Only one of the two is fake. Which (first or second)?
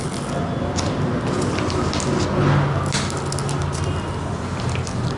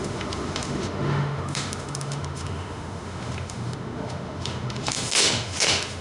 second